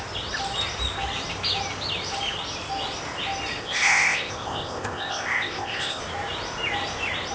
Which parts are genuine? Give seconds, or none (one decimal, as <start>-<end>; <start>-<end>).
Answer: 0.0-3.6; 6.0-7.3